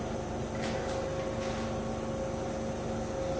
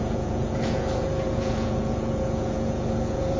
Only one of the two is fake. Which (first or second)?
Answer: second